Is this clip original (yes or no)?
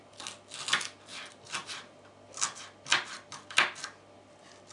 yes